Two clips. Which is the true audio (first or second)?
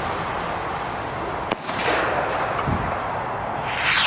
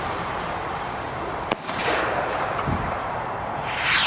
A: first